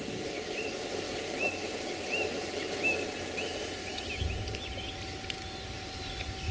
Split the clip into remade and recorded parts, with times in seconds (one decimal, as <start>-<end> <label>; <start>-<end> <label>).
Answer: 0.0-6.5 recorded

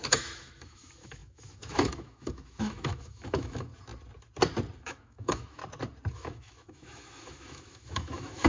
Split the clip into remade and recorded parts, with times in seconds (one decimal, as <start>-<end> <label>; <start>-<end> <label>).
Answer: 0.0-3.7 remade; 3.7-4.8 recorded; 4.8-5.6 remade; 5.6-6.1 recorded; 6.1-8.5 remade